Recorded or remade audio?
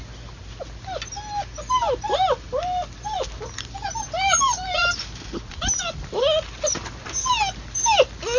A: recorded